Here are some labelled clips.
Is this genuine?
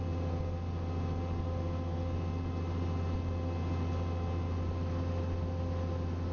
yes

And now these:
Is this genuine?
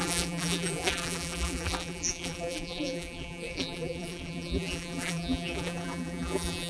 no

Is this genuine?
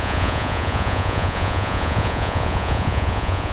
no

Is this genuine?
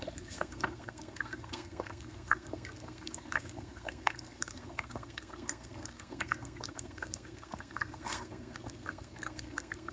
no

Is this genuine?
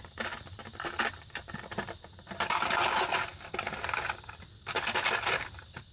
yes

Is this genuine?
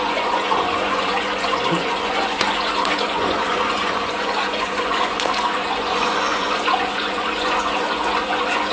no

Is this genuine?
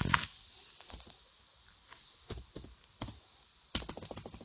yes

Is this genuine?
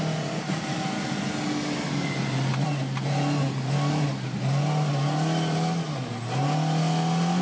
yes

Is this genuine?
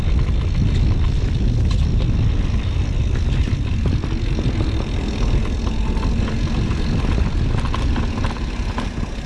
yes